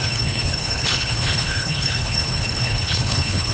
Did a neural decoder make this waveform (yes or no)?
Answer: yes